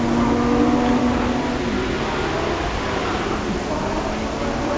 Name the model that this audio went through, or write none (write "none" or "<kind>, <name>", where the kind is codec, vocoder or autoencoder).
none